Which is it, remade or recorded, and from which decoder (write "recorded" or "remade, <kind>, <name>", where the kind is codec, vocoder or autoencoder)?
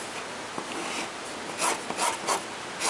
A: recorded